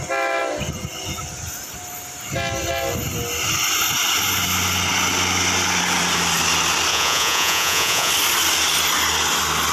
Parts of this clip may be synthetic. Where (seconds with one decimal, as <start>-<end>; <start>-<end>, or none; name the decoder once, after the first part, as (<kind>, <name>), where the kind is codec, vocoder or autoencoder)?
6.9-8.1 (vocoder, Vocos)